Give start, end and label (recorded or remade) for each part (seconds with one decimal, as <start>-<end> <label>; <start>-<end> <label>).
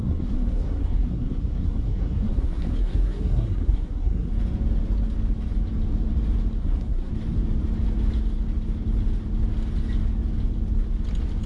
0.0-4.3 remade; 4.3-6.6 recorded; 6.6-7.1 remade; 7.1-11.5 recorded